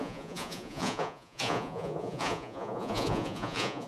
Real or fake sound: fake